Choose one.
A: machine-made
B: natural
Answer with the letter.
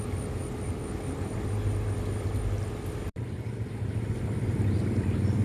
A